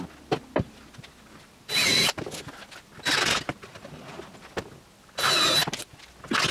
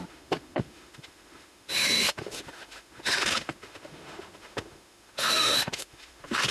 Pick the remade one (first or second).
second